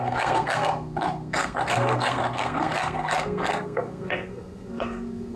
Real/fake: fake